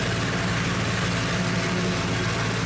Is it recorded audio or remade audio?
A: recorded